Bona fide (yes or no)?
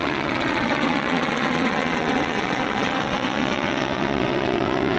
no